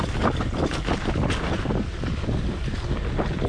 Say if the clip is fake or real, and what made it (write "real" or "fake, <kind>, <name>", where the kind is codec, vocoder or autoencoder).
real